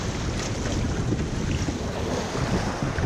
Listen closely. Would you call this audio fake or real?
real